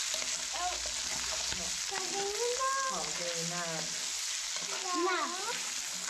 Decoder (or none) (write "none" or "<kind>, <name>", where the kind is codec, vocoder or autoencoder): none